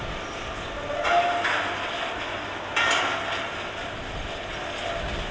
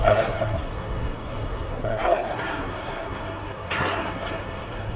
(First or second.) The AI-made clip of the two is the second